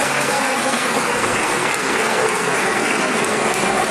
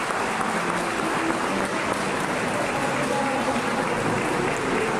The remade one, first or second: first